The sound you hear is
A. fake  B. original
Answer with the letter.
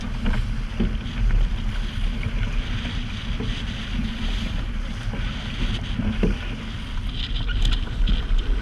B